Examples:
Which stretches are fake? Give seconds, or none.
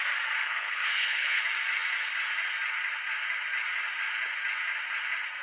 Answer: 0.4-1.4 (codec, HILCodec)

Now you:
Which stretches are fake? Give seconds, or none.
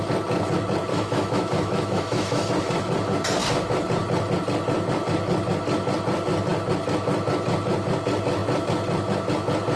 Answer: 0.9-2.5 (autoencoder, DAC-VAE)